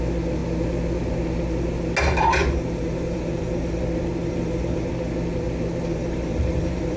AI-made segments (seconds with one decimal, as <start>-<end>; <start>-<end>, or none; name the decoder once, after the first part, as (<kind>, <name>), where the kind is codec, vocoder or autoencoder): 2.4-3.8 (vocoder, BigVGAN v2); 4.2-4.9; 5.9-7.0